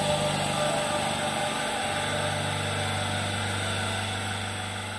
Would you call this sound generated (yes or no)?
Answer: no